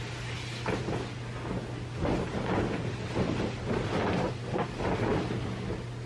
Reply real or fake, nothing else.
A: real